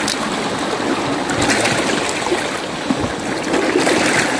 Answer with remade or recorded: recorded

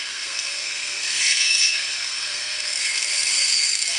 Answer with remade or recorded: remade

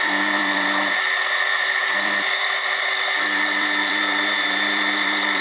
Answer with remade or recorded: remade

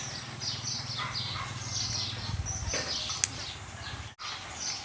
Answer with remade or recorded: recorded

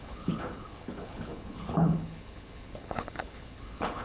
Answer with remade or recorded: remade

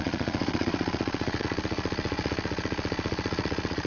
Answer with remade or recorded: remade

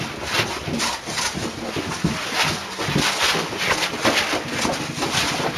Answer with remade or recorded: recorded